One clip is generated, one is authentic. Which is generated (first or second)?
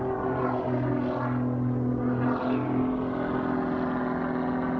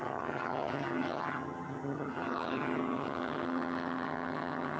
second